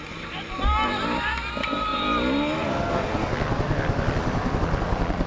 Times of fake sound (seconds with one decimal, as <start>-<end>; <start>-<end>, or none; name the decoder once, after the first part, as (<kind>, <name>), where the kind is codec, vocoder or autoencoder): none